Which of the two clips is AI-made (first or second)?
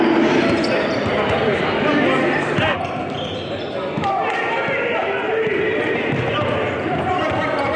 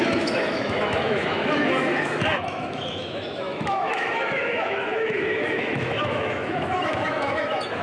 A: second